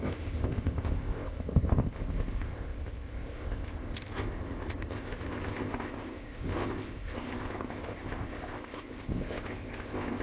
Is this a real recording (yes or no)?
no